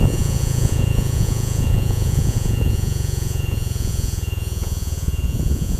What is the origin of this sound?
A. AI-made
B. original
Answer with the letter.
A